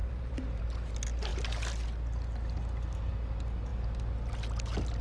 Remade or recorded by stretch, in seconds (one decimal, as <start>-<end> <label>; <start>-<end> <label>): 0.0-0.6 remade; 0.6-5.0 recorded